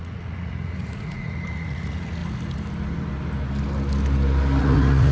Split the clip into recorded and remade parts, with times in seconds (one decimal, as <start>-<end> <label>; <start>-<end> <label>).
0.0-2.2 remade; 2.2-4.6 recorded; 4.6-5.1 remade